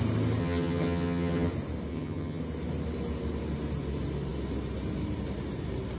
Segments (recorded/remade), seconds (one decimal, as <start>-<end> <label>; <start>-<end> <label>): 0.0-0.4 recorded; 0.4-1.5 remade; 1.5-1.9 recorded; 1.9-2.4 remade; 2.4-6.0 recorded